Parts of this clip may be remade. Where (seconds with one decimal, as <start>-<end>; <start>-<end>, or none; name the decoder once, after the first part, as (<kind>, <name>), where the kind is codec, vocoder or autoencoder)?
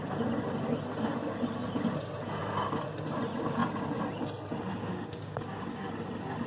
4.7-5.9 (codec, DAC)